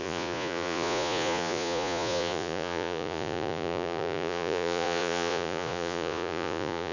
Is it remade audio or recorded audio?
remade